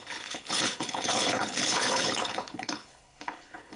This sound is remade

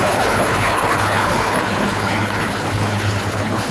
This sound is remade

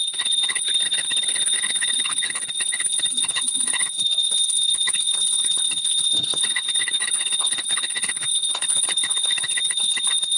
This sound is remade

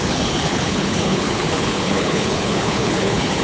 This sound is remade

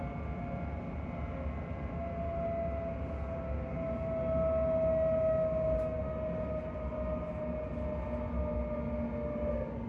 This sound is recorded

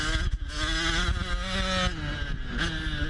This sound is recorded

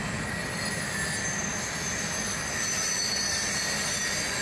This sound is recorded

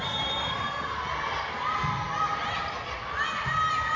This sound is recorded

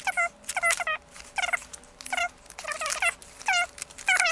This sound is recorded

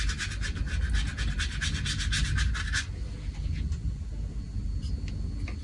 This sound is recorded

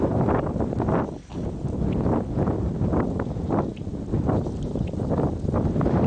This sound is recorded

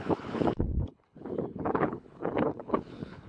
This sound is remade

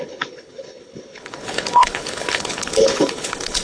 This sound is remade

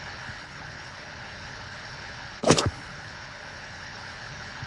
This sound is remade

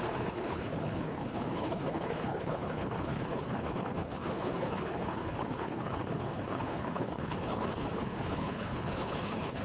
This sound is remade